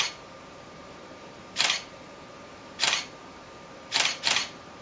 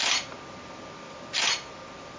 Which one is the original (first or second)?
second